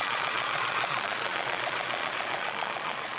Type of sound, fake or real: fake